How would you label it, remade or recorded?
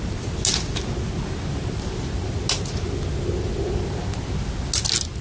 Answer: recorded